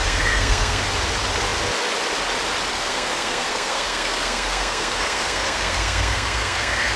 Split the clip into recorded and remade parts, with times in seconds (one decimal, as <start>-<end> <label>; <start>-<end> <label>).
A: 0.0-0.8 remade; 0.8-2.7 recorded; 2.7-7.0 remade